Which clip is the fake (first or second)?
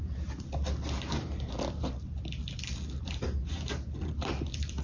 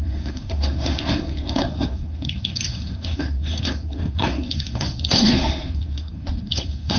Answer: second